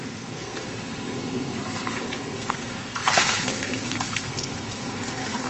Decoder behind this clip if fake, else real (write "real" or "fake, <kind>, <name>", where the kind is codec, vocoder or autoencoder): fake, codec, SNAC